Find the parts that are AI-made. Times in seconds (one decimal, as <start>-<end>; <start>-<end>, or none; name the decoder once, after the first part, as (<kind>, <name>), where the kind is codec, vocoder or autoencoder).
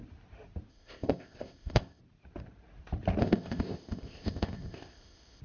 0.7-2.0 (codec, ZipCodec); 3.2-5.4